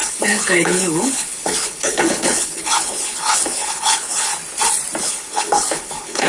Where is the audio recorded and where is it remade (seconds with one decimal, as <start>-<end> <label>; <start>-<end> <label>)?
0.0-4.3 remade; 4.3-5.0 recorded; 5.0-6.3 remade